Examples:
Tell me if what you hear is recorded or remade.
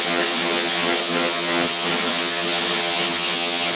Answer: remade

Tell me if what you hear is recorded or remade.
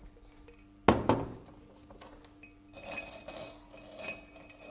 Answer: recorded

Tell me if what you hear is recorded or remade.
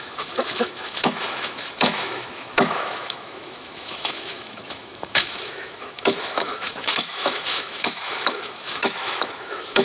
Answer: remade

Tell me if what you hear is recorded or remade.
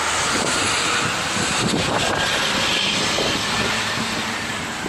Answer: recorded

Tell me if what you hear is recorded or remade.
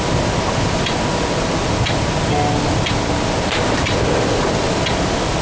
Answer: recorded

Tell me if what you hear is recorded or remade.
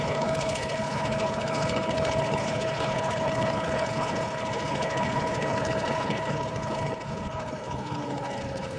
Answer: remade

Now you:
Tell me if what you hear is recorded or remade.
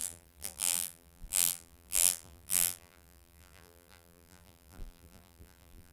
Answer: remade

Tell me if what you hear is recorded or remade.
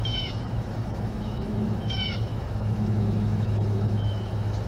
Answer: remade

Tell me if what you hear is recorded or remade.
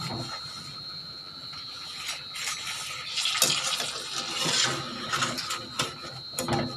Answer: recorded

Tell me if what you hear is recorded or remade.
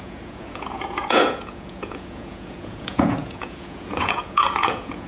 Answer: remade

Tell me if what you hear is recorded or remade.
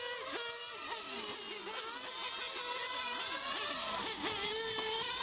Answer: recorded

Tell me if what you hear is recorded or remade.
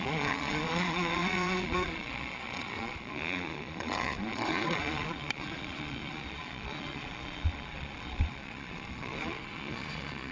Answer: remade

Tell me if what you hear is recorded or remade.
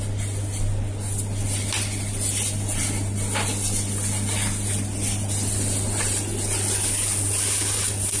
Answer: recorded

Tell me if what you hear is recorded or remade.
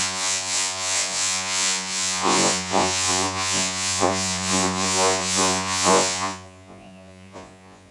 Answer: remade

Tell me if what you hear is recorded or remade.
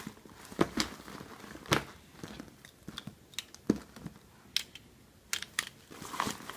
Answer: recorded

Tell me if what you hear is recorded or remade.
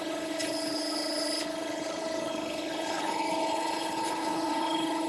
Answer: remade